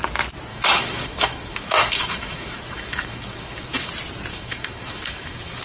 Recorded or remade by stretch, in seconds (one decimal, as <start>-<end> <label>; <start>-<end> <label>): 0.0-0.5 recorded; 0.5-3.9 remade; 3.9-4.3 recorded; 4.3-5.6 remade

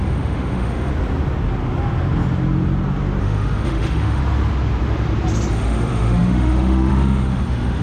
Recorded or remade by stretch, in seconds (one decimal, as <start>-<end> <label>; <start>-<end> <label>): 0.0-0.9 remade; 0.9-3.2 recorded; 3.2-4.2 remade; 4.2-5.5 recorded; 5.5-7.8 remade